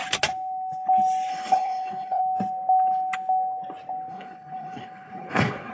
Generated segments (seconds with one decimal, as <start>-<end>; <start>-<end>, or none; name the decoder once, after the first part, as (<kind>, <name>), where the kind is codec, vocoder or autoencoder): 1.3-2.2 (codec, HILCodec); 4.1-5.7